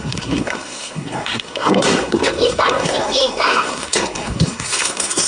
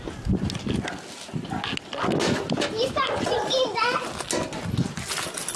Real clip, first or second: second